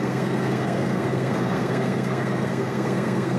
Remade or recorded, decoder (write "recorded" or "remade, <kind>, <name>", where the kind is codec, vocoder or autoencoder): remade, codec, SNAC